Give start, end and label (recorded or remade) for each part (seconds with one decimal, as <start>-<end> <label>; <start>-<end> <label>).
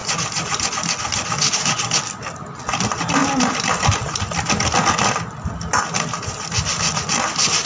0.0-7.7 recorded